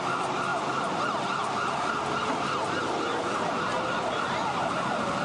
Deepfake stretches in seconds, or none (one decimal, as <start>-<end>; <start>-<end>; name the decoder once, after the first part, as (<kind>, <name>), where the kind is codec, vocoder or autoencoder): none